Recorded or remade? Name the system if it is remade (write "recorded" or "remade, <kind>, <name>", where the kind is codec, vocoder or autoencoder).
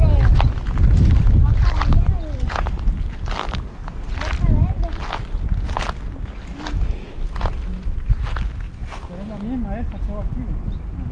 recorded